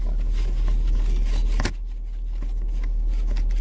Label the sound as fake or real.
real